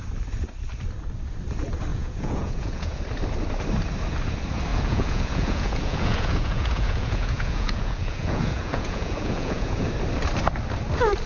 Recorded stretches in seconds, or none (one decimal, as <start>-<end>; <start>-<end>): 0.0-1.9; 3.0-4.7; 9.9-11.3